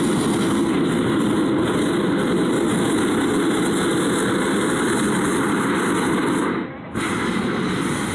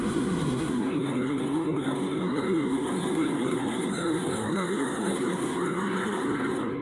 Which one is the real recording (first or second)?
first